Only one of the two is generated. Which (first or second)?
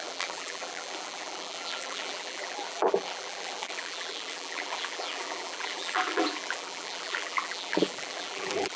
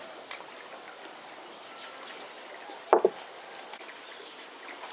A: first